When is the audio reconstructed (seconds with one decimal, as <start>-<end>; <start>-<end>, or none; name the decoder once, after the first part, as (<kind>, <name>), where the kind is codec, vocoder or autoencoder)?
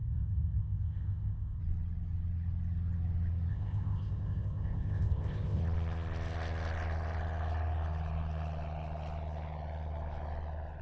0.0-1.6 (codec, ZipCodec); 3.5-5.6